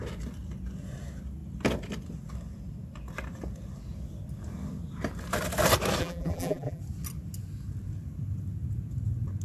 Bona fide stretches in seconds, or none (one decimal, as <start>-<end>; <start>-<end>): 0.0-6.0; 6.8-9.4